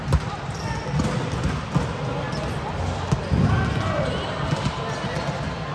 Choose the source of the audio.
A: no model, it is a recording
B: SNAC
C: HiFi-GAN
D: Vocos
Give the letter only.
A